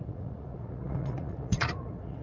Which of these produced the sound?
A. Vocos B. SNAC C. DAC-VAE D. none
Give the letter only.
A